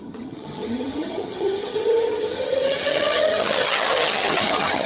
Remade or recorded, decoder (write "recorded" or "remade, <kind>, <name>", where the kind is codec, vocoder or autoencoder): remade, vocoder, HiFi-GAN